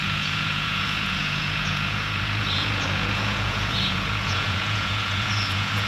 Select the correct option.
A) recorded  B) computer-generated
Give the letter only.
B